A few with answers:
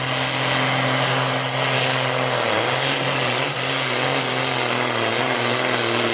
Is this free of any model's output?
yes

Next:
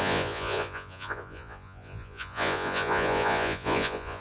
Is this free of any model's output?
no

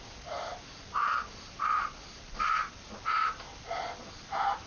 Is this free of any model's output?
yes